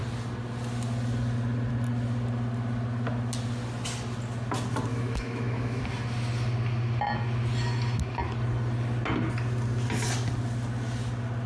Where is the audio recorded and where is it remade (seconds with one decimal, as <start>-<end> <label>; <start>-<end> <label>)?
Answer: 0.0-4.9 recorded; 4.9-5.8 remade; 5.8-11.5 recorded